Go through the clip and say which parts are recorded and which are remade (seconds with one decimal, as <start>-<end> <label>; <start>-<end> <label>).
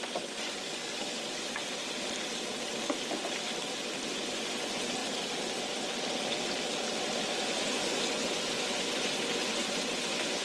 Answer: 0.0-0.8 remade; 0.8-4.1 recorded; 4.1-5.0 remade; 5.0-7.3 recorded; 7.3-10.4 remade